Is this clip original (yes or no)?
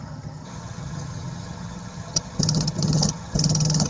no